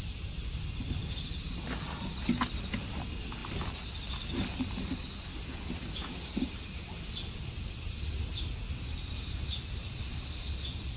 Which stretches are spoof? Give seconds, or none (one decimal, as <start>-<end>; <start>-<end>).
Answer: none